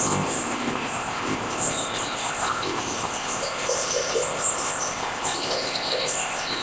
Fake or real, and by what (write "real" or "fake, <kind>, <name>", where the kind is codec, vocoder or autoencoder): fake, codec, ZipCodec